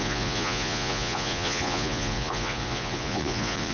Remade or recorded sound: remade